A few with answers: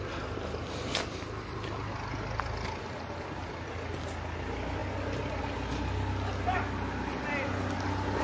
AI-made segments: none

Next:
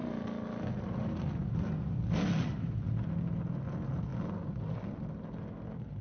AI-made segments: none

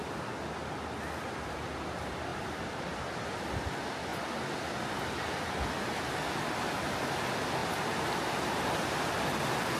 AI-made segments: 2.3-3.4 (vocoder, BigVGAN v2); 7.6-8.6

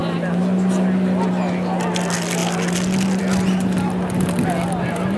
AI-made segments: none